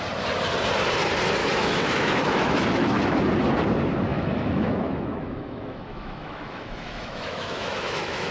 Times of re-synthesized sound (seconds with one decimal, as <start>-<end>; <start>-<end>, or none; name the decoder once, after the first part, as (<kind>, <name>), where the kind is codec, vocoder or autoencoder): 1.4-3.2 (autoencoder, DAC-VAE); 4.1-8.3